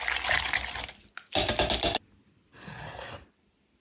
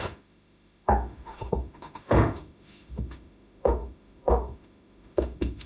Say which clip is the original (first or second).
first